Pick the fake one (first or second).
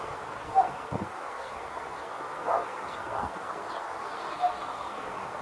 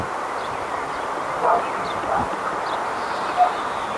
first